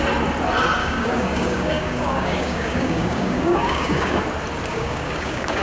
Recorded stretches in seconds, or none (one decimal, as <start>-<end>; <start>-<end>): 0.0-0.8; 4.2-4.7